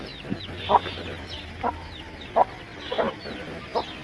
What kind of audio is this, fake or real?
real